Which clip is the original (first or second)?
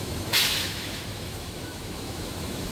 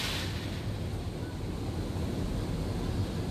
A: second